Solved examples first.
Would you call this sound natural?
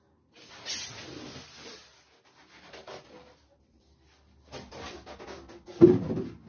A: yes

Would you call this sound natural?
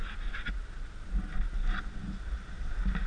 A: yes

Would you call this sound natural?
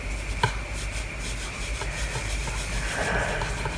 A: yes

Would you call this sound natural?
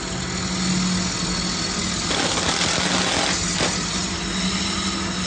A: yes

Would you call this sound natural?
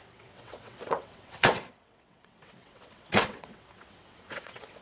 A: no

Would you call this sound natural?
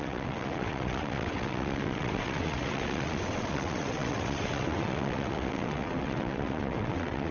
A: no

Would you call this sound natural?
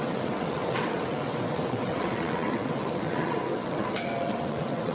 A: no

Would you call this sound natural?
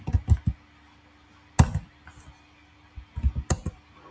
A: yes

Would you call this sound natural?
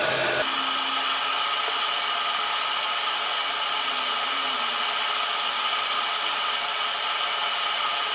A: yes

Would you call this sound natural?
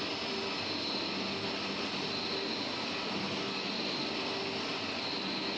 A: yes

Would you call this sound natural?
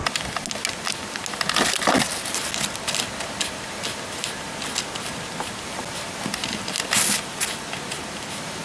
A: yes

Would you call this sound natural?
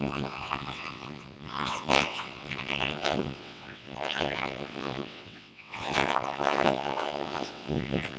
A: no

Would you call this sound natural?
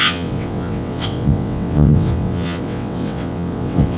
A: no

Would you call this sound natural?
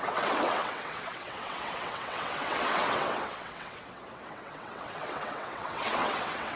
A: no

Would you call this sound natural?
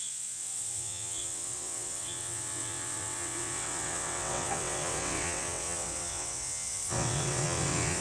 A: no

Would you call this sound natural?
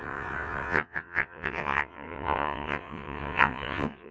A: no